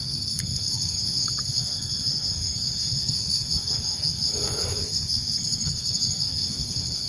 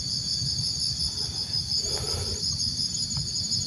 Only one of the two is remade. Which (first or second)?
first